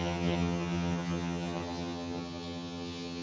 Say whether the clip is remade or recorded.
remade